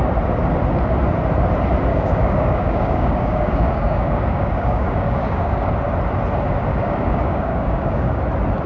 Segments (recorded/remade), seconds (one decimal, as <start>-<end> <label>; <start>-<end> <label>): 0.0-1.9 recorded; 1.9-5.7 remade; 5.7-6.7 recorded; 6.7-8.2 remade; 8.2-8.7 recorded